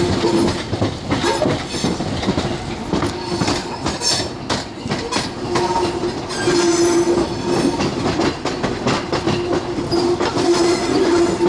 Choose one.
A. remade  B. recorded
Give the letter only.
B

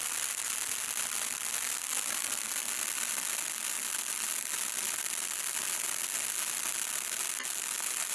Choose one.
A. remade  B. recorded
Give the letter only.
B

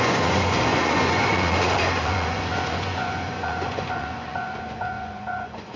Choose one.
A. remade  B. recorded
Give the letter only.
A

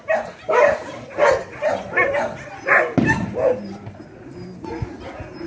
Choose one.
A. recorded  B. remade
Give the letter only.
A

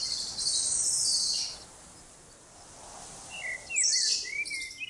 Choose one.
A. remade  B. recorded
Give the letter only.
B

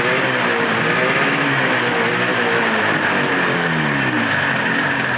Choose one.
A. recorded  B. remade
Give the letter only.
A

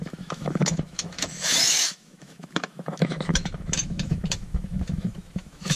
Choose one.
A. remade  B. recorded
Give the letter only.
A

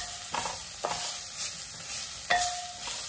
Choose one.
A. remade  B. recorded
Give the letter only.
B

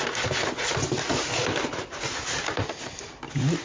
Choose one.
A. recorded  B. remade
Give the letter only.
A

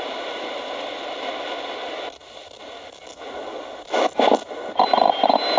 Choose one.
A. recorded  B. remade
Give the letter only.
A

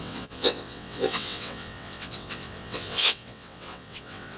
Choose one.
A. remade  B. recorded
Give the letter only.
A